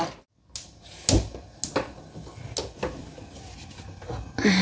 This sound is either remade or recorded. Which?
recorded